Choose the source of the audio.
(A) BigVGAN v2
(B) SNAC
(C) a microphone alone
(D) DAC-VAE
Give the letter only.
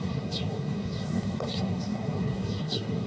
B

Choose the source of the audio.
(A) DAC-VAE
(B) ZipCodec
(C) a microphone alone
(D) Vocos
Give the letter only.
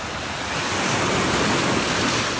C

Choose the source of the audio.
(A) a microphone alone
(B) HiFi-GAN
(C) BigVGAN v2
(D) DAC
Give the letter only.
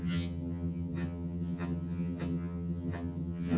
B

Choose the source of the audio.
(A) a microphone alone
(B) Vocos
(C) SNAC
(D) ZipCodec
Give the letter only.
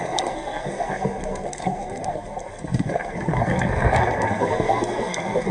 C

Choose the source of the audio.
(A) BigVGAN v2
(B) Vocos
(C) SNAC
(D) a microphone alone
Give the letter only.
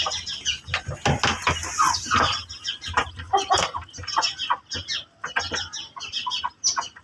D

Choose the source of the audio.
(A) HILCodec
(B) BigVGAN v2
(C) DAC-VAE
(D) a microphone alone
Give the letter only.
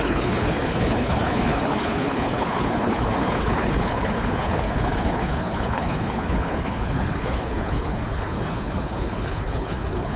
A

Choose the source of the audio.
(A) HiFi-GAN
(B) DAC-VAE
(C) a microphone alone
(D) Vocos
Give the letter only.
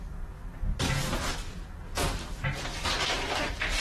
C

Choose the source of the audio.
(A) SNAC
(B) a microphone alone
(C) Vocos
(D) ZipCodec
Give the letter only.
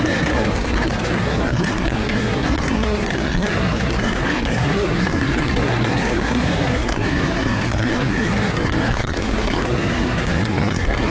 A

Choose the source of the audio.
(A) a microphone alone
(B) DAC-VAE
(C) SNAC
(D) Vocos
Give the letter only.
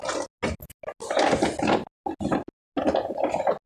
A